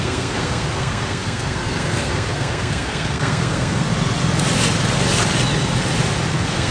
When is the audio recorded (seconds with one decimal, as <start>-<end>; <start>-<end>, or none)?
3.9-6.3